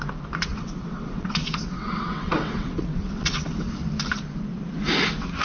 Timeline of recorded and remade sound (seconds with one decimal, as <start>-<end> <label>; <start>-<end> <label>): 0.0-0.5 recorded; 0.5-3.7 remade; 3.7-5.4 recorded